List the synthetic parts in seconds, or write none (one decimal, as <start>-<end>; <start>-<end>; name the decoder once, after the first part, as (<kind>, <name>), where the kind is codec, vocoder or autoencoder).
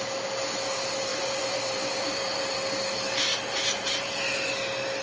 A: 1.1-2.4 (vocoder, BigVGAN v2); 3.3-4.2